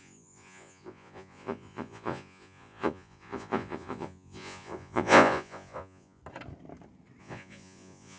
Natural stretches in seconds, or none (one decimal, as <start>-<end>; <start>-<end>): 6.2-7.2